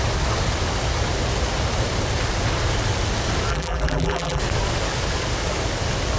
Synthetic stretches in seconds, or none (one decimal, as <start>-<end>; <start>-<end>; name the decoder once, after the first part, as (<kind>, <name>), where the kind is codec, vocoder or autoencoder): 3.5-4.4 (vocoder, BigVGAN v2)